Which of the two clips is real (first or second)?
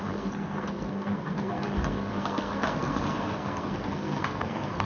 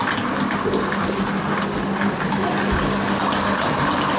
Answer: second